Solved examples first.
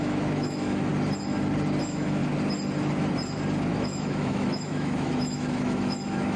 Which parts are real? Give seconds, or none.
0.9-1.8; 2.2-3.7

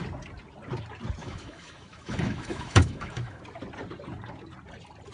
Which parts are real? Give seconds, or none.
0.0-1.2; 3.4-5.1